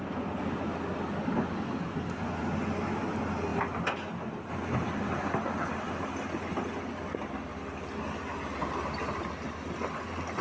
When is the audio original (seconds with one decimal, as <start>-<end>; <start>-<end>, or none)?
0.0-10.4